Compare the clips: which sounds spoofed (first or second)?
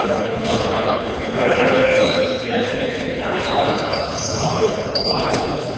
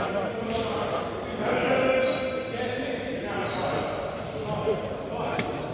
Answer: first